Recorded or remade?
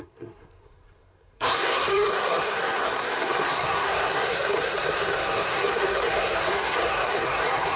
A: remade